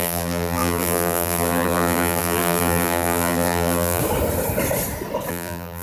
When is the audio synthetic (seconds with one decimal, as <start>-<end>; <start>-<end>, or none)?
0.0-4.0; 5.3-5.8